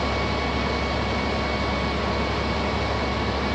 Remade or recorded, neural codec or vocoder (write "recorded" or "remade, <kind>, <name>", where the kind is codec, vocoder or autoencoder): recorded